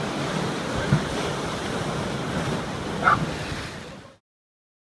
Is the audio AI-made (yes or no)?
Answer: no